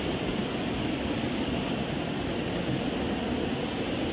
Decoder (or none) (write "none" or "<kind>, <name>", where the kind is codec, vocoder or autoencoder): none